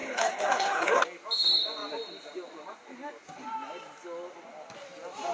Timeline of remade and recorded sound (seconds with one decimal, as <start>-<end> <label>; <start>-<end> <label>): 0.0-1.0 remade; 1.0-5.3 recorded